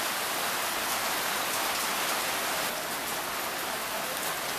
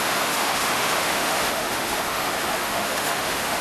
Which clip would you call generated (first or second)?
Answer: second